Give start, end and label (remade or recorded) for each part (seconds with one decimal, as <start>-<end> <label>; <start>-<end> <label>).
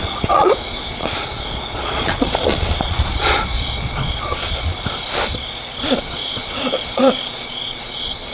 0.0-4.7 remade; 4.7-5.9 recorded; 5.9-8.3 remade